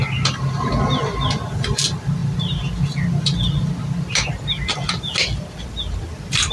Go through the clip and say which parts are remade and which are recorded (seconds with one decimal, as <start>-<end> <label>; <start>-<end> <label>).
0.0-6.5 recorded